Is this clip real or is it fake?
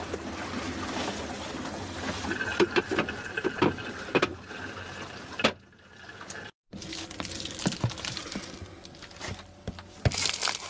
real